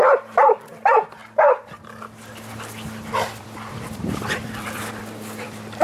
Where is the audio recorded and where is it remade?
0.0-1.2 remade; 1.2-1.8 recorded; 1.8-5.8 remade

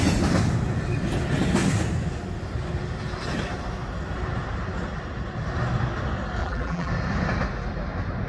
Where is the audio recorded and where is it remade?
0.0-6.4 recorded; 6.4-6.9 remade; 6.9-8.3 recorded

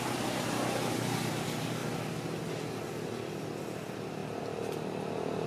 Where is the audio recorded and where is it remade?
0.0-5.5 recorded

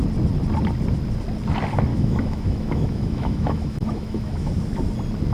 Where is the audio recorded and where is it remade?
0.0-1.9 recorded; 1.9-4.5 remade; 4.5-5.3 recorded

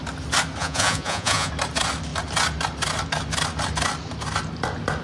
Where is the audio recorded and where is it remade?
0.0-0.6 recorded; 0.6-1.5 remade; 1.5-5.0 recorded

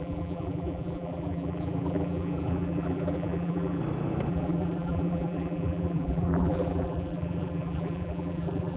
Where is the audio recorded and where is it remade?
0.0-3.8 remade; 3.8-4.3 recorded; 4.3-8.8 remade